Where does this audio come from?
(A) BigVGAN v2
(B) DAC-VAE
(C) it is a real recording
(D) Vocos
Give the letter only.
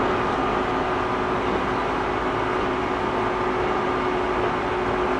C